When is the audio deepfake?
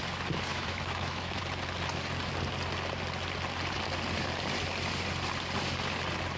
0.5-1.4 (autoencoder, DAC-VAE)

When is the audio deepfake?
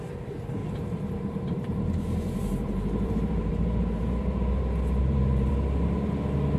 0.6-4.6 (vocoder, BigVGAN v2); 5.0-5.5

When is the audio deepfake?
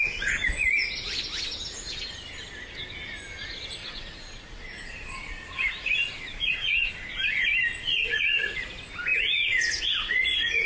3.8-6.9 (vocoder, Vocos); 7.8-8.6; 9.1-10.7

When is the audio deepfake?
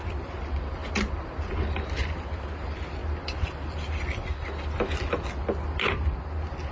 none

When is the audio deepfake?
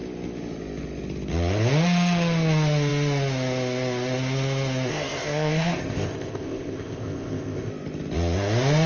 4.9-7.7 (codec, ZipCodec)